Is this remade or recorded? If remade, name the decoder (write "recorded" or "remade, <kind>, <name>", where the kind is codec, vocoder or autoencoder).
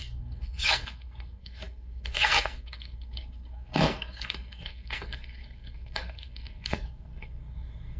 remade, codec, SNAC